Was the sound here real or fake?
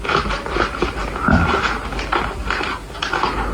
real